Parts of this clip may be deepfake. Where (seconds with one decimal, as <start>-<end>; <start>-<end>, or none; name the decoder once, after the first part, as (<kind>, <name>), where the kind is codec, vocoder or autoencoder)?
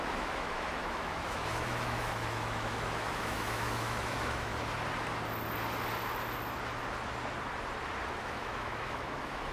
0.0-4.5 (autoencoder, DAC-VAE); 8.1-9.5